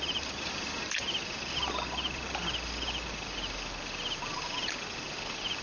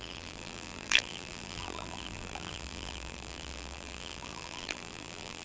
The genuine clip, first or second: first